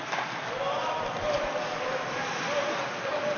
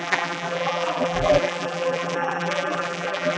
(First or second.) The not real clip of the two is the second